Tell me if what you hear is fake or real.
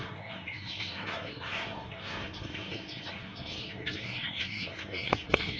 fake